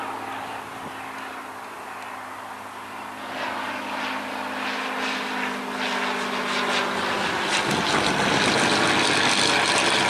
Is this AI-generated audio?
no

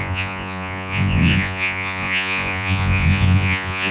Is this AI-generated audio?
yes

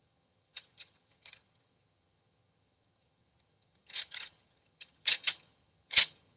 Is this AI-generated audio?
yes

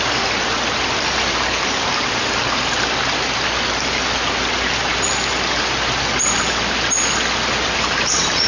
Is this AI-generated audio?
no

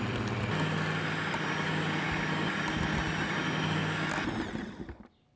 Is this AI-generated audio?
no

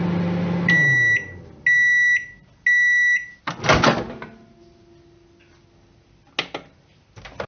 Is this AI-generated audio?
no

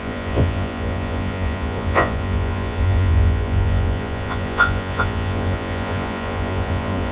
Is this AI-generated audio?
yes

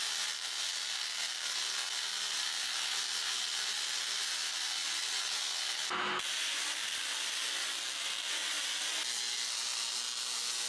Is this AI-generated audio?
no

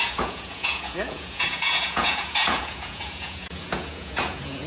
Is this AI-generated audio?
yes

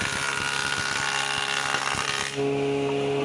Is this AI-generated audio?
no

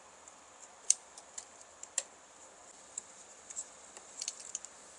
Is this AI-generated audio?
yes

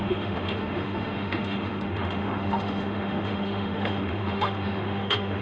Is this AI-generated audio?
yes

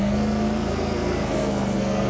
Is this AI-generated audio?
yes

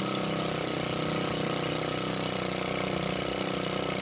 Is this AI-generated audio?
no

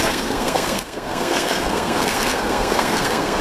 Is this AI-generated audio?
yes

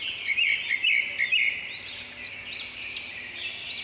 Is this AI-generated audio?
no